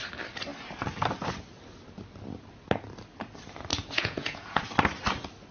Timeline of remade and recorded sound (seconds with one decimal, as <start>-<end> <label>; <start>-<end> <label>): 0.0-3.7 recorded; 3.7-4.6 remade; 4.6-5.5 recorded